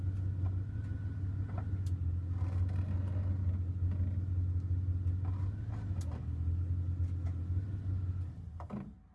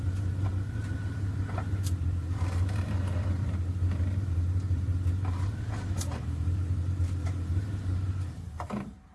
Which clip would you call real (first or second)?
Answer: first